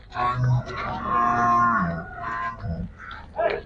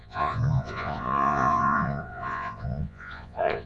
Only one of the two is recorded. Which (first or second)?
first